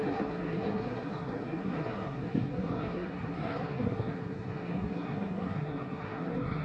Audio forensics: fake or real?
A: fake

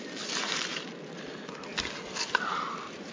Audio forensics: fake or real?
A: real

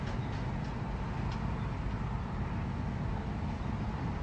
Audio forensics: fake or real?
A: real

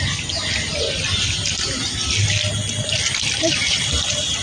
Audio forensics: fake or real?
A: real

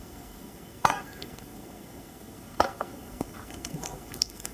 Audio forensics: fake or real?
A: fake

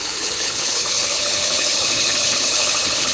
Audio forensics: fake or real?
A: fake